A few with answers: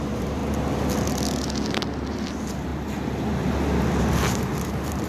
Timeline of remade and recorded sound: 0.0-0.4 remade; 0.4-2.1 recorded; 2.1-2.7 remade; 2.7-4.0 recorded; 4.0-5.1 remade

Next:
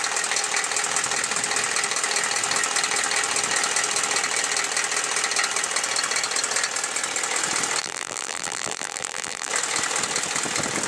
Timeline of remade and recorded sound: 0.0-7.8 recorded; 7.8-9.5 remade; 9.5-10.9 recorded